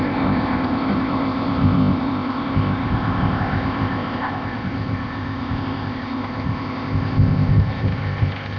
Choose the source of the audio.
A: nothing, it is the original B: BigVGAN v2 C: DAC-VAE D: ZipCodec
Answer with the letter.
D